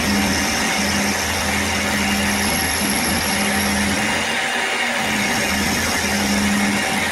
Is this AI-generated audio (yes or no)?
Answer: no